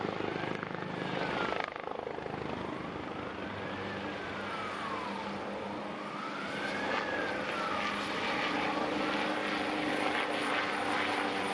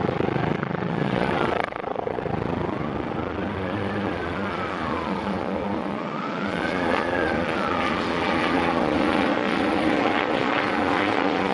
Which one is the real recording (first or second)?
first